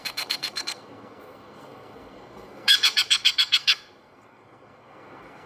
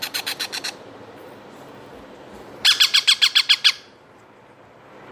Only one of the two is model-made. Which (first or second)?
first